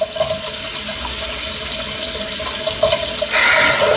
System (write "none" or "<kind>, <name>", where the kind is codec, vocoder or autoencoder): none